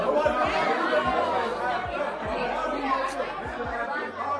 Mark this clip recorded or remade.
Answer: recorded